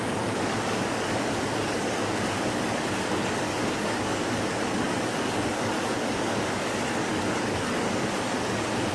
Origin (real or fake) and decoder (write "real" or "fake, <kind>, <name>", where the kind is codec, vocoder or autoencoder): fake, codec, DAC